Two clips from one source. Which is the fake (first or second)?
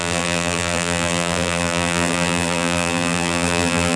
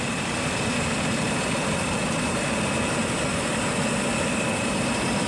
first